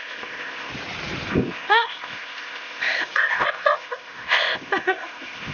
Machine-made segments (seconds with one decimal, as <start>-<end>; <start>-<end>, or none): 0.0-0.7; 1.3-5.5